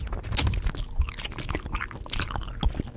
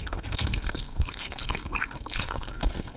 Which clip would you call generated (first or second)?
second